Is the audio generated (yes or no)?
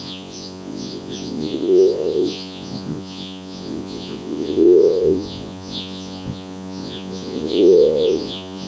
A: yes